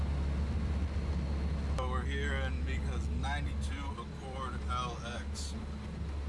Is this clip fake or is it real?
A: real